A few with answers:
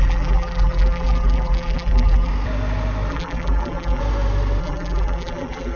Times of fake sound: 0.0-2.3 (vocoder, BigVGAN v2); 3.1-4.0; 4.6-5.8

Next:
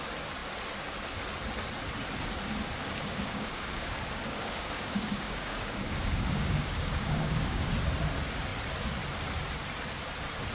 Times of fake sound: 2.8-7.7 (codec, DAC)

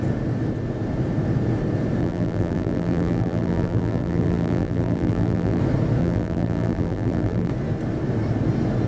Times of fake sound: 2.0-5.6 (vocoder, BigVGAN v2); 6.0-7.5

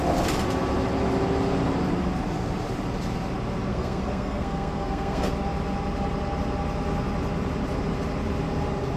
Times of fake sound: 3.7-5.3 (codec, SNAC)

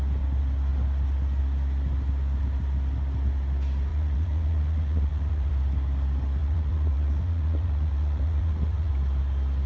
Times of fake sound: 3.9-5.5 (vocoder, Vocos); 6.4-8.9

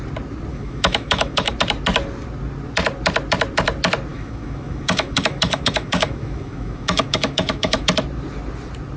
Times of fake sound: 0.5-1.5 (autoencoder, DAC-VAE); 4.1-7.9

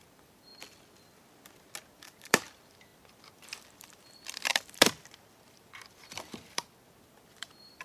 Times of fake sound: 0.0-0.5 (vocoder, BigVGAN v2); 1.9-7.8